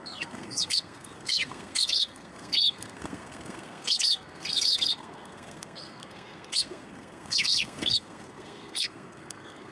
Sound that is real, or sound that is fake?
fake